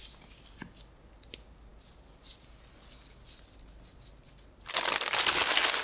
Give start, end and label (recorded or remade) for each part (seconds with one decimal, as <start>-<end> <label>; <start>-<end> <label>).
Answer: 0.0-5.8 recorded